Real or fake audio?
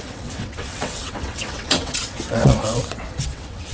fake